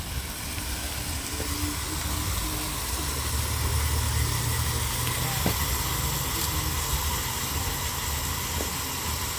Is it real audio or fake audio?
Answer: real